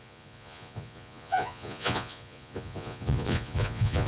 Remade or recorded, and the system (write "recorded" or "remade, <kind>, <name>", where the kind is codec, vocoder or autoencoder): remade, vocoder, Vocos